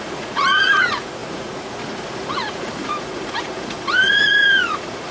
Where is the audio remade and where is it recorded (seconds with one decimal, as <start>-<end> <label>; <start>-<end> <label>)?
0.0-5.1 remade